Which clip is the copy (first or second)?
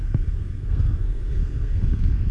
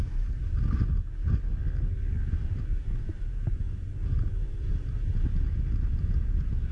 first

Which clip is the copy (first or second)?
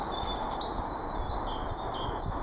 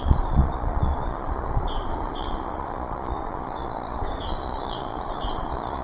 second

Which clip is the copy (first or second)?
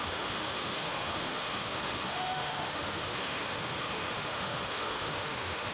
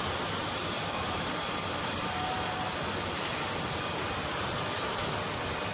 first